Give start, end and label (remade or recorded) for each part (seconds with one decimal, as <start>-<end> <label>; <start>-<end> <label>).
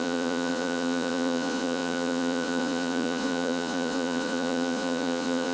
0.0-5.5 remade